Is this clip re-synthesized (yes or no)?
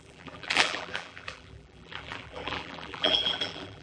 yes